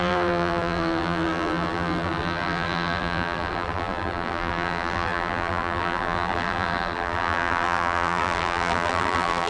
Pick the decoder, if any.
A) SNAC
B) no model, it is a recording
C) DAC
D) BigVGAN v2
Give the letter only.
D